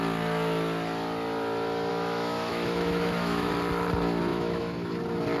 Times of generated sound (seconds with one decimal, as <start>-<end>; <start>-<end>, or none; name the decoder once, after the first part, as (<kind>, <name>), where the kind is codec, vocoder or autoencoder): 1.9-3.5 (autoencoder, DAC-VAE); 4.3-4.9